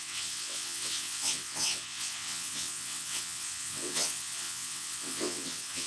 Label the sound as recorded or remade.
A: remade